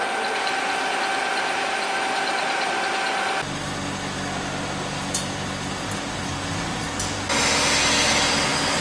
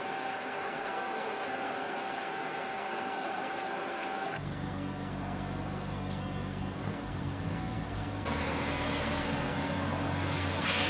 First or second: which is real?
first